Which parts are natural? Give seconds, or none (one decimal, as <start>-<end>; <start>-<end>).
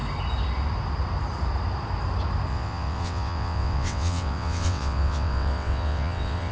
0.0-2.5